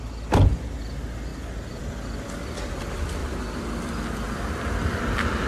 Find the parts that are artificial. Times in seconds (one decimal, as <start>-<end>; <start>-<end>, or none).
none